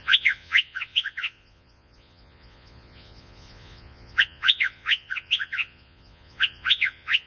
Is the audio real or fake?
fake